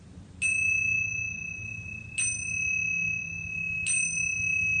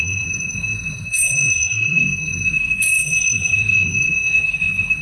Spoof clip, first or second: second